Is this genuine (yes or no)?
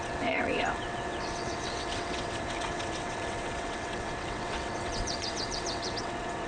no